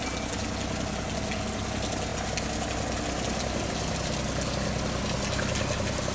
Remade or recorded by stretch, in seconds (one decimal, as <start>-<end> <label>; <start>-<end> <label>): 0.0-6.1 recorded